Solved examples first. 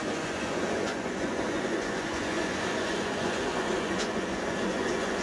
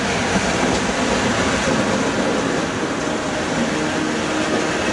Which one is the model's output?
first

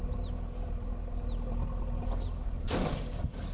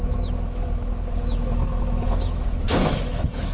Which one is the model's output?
second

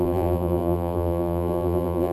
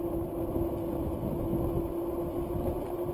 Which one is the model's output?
first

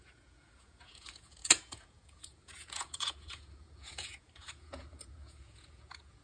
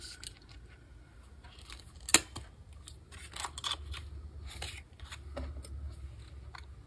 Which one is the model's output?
first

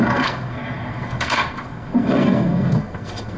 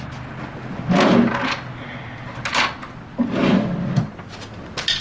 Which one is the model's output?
first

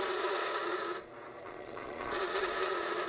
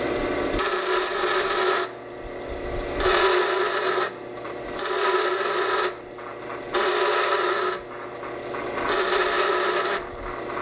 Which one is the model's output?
first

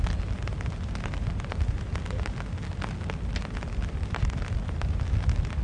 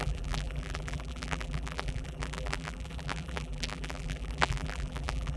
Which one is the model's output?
second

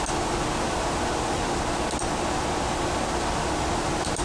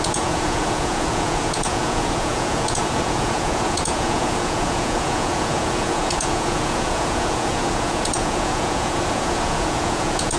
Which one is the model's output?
second